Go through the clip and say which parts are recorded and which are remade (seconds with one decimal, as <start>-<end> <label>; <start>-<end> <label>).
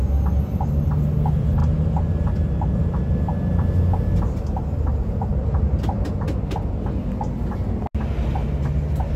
0.0-9.2 recorded